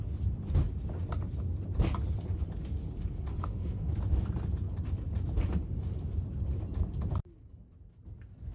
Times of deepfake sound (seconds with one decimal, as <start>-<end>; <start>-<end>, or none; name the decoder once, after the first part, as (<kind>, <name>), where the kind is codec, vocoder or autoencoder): 3.3-3.9 (autoencoder, DAC-VAE)

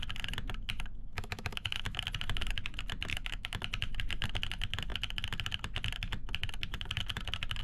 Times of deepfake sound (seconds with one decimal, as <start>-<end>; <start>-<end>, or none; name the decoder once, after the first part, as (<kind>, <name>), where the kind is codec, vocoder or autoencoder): 1.1-2.0 (autoencoder, DAC-VAE); 3.1-3.6

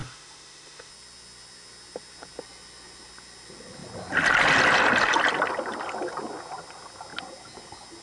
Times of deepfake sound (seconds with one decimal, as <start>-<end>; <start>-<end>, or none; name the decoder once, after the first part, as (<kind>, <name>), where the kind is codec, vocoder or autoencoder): 0.0-0.9 (autoencoder, DAC-VAE)

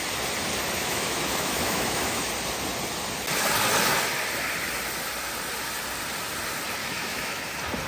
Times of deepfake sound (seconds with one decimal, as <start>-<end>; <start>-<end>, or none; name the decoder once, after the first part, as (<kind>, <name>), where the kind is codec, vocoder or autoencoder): 0.8-2.3 (autoencoder, DAC-VAE); 6.8-7.4

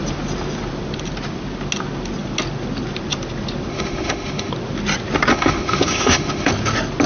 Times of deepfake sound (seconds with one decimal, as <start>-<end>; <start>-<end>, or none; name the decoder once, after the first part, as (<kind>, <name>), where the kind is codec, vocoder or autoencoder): 3.7-4.5 (autoencoder, DAC-VAE); 5.3-6.5

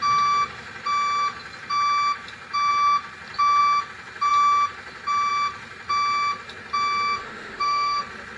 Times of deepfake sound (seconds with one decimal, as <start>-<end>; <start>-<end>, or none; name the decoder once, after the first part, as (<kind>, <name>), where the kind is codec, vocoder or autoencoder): 7.2-8.0 (autoencoder, DAC-VAE)